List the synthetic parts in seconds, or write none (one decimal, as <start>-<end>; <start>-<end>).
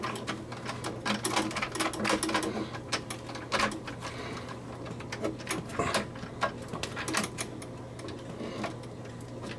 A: none